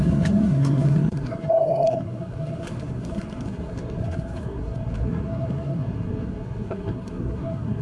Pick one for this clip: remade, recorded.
remade